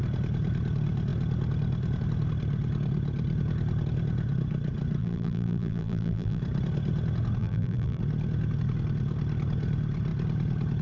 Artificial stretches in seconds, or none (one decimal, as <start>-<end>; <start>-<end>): 5.0-6.4; 7.4-8.0

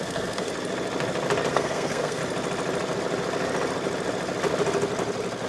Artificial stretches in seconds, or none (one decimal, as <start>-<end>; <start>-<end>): 0.0-0.5; 1.5-2.2

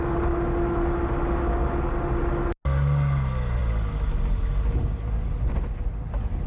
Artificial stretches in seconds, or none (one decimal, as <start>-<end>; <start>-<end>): none

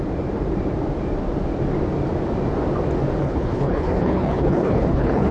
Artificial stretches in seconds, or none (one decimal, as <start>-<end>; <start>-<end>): 3.2-5.3

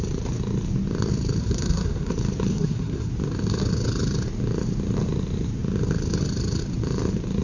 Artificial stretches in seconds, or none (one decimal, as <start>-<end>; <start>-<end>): 1.4-2.1; 2.5-3.1

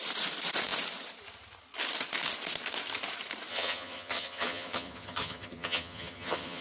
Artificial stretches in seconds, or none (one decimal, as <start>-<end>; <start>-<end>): 3.5-6.6